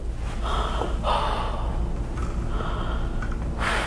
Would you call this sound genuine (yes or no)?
yes